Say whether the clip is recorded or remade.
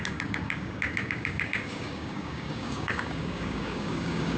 remade